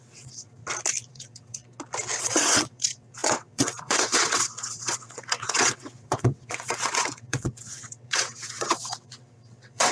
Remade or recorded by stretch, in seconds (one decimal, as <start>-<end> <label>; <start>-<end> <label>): 0.0-0.6 remade; 0.6-1.1 recorded; 1.1-1.6 remade; 1.6-2.2 recorded; 2.2-9.9 remade